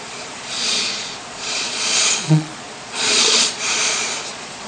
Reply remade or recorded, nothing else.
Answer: remade